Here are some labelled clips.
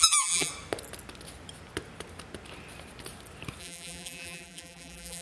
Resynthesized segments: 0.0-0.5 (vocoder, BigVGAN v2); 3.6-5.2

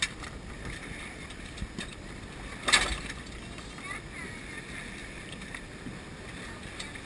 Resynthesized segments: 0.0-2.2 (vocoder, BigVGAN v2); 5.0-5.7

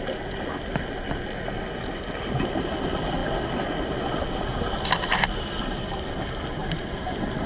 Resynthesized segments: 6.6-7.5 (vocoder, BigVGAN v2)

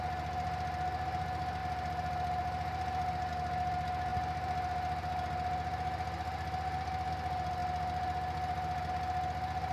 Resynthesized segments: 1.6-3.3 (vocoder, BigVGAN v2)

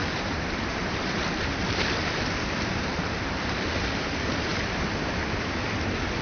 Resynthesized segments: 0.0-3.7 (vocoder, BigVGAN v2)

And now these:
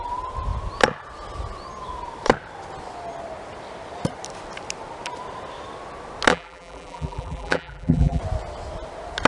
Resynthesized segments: 6.3-8.2 (vocoder, BigVGAN v2)